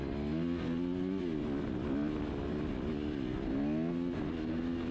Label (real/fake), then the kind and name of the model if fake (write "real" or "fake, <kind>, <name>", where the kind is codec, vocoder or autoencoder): real